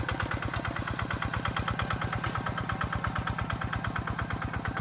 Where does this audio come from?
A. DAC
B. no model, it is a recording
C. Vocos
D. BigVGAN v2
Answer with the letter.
B